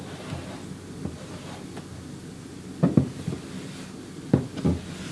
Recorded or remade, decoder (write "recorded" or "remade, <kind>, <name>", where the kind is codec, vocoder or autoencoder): recorded